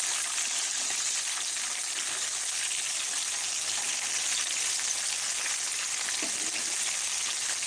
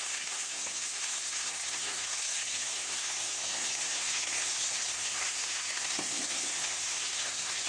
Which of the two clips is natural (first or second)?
first